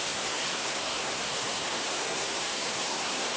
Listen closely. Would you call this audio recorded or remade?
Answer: remade